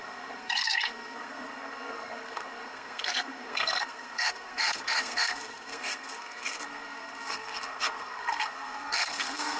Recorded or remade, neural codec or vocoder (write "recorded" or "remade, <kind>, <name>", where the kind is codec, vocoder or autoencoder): remade, codec, SNAC